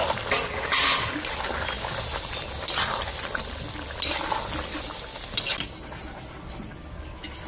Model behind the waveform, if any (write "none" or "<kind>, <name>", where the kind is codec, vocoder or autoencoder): none